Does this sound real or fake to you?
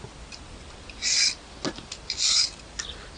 real